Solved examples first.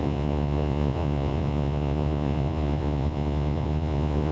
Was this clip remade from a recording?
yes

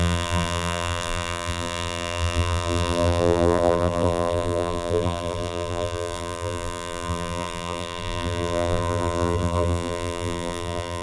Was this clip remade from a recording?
yes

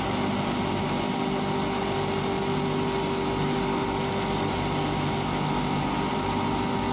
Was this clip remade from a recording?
no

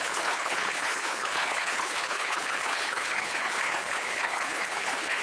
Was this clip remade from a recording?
yes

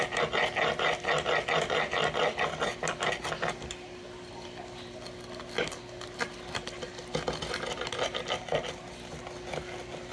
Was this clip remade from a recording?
no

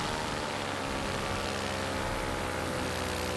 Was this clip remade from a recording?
no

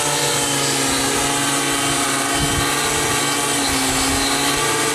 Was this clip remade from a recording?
no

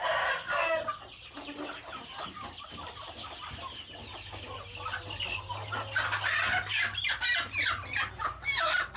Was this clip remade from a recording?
no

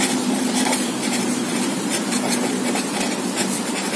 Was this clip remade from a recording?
yes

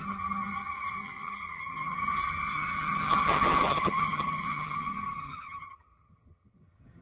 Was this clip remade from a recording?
yes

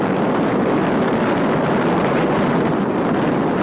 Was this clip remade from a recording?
no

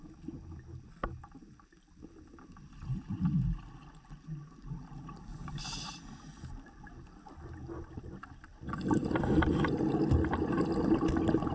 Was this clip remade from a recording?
no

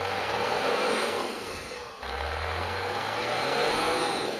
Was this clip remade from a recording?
yes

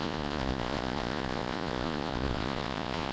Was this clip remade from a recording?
yes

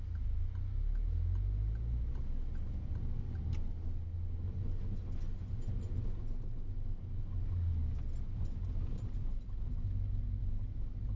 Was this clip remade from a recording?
no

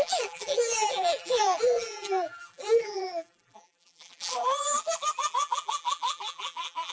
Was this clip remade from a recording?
yes